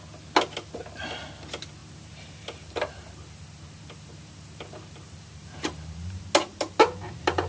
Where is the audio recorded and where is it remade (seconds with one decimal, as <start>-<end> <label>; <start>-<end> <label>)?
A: 0.0-1.8 recorded; 1.8-6.2 remade; 6.2-7.5 recorded